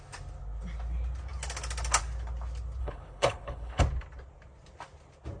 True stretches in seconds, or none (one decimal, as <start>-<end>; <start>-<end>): 0.0-2.8; 3.8-5.4